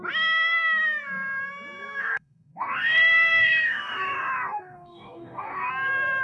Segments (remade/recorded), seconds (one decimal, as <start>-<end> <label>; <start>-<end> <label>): 0.0-2.0 recorded; 2.0-5.7 remade; 5.7-6.2 recorded